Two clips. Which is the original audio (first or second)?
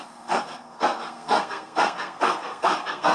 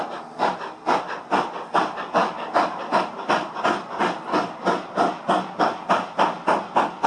second